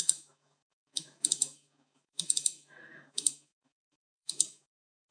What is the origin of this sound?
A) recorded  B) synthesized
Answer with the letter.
B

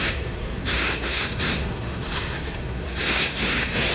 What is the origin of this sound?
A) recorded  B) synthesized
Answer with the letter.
B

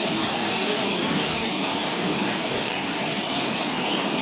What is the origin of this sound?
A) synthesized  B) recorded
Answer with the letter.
A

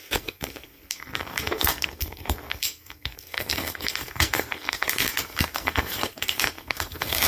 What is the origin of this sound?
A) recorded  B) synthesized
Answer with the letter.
B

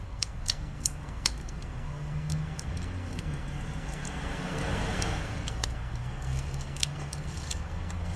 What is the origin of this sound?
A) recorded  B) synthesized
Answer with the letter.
B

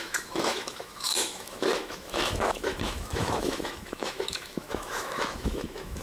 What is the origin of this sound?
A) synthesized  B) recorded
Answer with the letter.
A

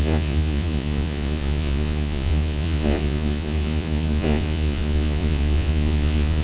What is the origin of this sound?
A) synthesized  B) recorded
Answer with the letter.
A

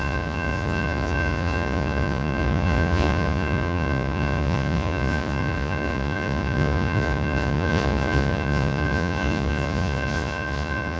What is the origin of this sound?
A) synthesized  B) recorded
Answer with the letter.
A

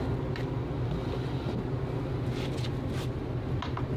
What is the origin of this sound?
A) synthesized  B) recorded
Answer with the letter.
B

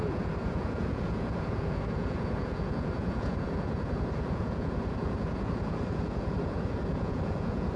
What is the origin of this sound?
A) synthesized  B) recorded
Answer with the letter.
A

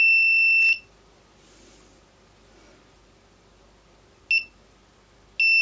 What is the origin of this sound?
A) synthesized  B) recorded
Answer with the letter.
B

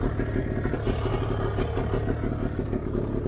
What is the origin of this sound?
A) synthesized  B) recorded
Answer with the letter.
B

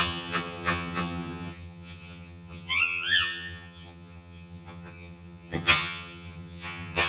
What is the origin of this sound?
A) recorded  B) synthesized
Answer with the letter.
B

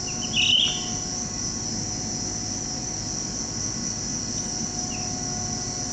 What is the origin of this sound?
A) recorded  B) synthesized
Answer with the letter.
A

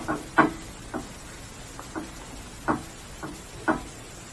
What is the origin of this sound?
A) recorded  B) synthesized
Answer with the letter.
A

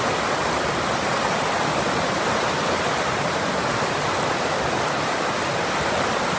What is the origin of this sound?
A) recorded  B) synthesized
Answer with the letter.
A